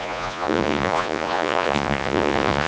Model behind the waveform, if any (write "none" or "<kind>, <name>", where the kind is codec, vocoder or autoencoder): vocoder, Vocos